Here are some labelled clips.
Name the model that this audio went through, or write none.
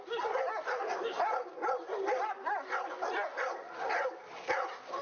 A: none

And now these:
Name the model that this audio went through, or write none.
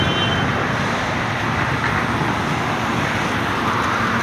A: none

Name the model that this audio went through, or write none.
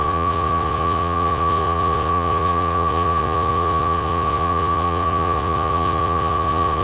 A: vocoder, Vocos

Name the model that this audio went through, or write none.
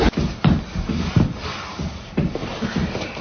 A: none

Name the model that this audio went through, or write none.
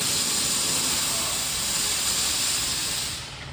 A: none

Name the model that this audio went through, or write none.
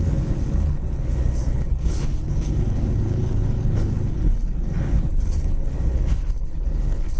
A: codec, HILCodec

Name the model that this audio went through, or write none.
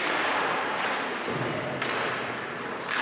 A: none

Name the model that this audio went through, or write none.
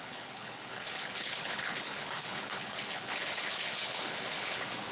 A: codec, HILCodec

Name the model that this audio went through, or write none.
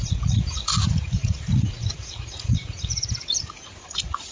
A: vocoder, Vocos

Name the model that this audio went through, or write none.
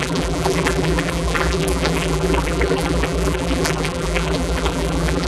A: vocoder, BigVGAN v2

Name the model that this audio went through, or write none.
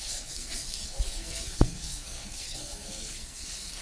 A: codec, SNAC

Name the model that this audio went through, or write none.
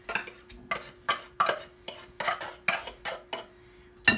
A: none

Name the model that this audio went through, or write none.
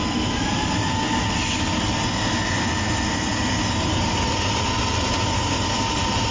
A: none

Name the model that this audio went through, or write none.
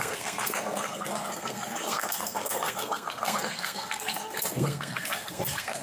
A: codec, SNAC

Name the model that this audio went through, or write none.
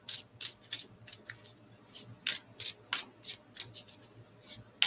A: none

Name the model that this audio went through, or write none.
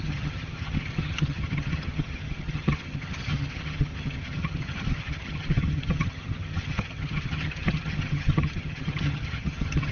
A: vocoder, HiFi-GAN